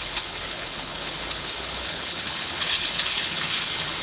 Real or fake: fake